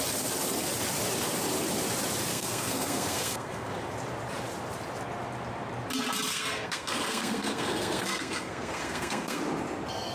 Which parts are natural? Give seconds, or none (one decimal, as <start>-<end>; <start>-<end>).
0.0-2.3; 3.7-6.3; 9.4-10.1